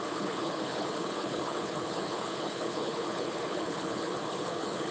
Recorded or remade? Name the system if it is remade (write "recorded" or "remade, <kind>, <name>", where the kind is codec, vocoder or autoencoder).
remade, codec, HILCodec